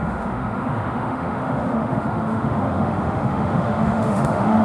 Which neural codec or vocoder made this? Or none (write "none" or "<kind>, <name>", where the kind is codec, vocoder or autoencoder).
autoencoder, DAC-VAE